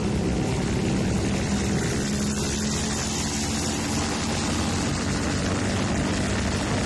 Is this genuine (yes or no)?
yes